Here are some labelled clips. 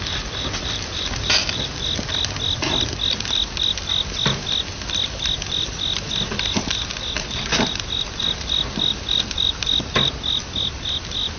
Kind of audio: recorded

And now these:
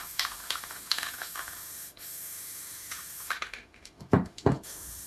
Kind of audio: remade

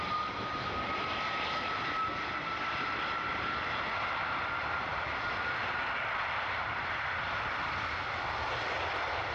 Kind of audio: remade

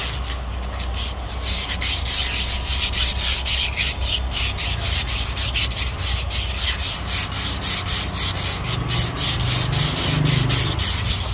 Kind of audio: recorded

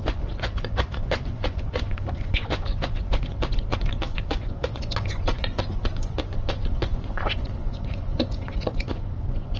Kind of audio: remade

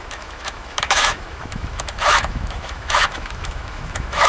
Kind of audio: remade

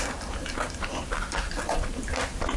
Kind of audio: recorded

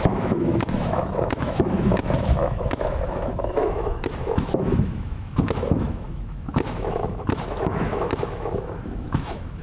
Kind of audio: remade